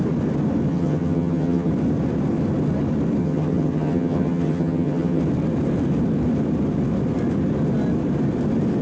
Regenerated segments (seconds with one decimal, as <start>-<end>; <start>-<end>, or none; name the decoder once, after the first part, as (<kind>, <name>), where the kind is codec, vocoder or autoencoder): 0.7-1.7 (vocoder, HiFi-GAN); 3.2-5.2